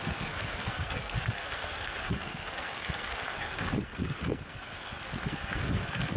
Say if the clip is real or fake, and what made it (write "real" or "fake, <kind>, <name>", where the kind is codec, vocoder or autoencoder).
fake, codec, SNAC